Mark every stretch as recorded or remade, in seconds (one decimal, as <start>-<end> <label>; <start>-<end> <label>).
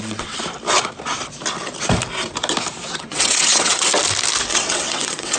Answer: 0.0-0.4 remade; 0.4-3.0 recorded; 3.0-3.9 remade; 3.9-4.5 recorded; 4.5-5.4 remade